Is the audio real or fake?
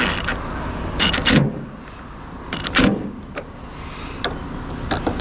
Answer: real